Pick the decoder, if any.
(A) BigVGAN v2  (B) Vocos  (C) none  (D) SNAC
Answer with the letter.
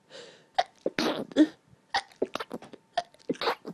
C